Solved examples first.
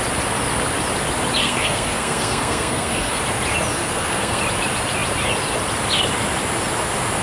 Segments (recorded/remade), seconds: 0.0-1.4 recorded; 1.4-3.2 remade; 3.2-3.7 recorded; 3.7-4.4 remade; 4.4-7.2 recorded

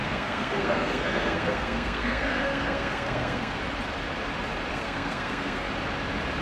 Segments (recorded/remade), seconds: 0.0-3.6 remade; 3.6-4.7 recorded; 4.7-5.7 remade; 5.7-6.4 recorded

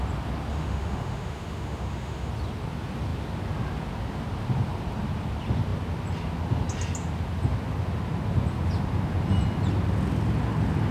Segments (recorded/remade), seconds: 0.0-0.5 recorded; 0.5-2.3 remade; 2.3-10.9 recorded

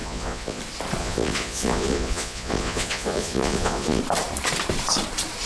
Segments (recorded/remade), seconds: 0.0-0.6 remade; 0.6-1.0 recorded; 1.0-4.0 remade; 4.0-5.5 recorded

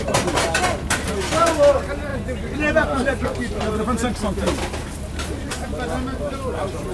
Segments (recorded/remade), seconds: 0.0-6.9 recorded